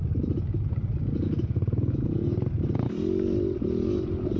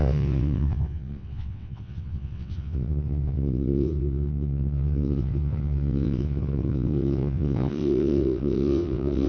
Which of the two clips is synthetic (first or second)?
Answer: second